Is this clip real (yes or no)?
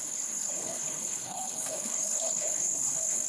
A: no